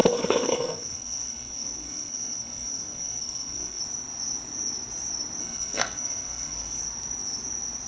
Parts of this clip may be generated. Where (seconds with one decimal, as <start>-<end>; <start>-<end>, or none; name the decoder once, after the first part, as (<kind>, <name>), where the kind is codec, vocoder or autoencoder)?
0.0-3.8 (codec, SNAC); 5.4-6.8